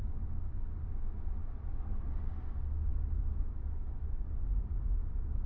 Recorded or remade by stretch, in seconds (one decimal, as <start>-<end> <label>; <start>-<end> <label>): 0.0-5.5 recorded